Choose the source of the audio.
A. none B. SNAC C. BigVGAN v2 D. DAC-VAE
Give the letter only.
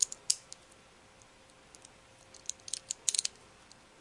A